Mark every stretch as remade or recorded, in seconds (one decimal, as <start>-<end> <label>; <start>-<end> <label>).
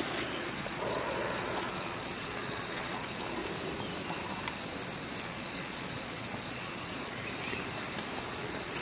0.0-3.4 remade; 3.4-5.2 recorded; 5.2-7.2 remade; 7.2-8.4 recorded; 8.4-8.8 remade